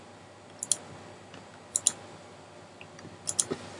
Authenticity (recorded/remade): recorded